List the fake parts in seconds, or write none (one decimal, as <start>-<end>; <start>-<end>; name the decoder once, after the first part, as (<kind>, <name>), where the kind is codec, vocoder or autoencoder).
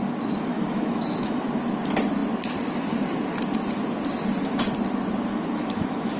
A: 0.5-1.5 (autoencoder, DAC-VAE); 5.3-6.2